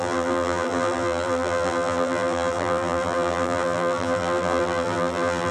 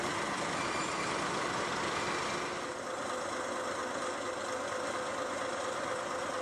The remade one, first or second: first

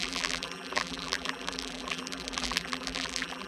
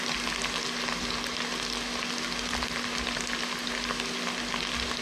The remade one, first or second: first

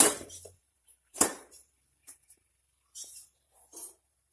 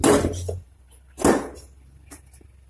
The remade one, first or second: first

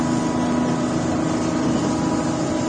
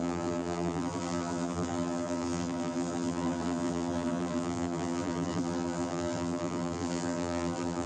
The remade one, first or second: second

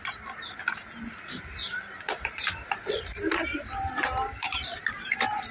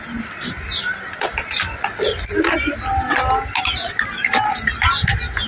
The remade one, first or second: first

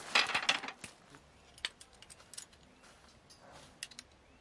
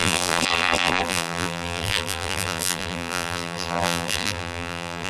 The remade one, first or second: second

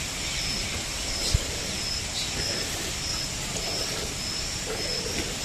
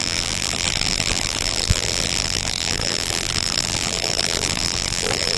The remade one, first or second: second